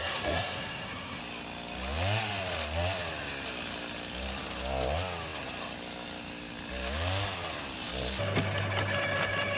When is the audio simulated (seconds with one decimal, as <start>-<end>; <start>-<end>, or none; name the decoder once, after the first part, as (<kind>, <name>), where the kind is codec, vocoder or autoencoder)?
0.0-1.2 (codec, SNAC)